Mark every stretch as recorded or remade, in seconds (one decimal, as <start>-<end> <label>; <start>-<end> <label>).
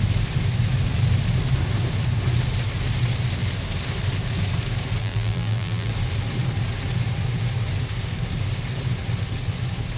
0.0-5.0 recorded; 5.0-5.9 remade; 5.9-10.0 recorded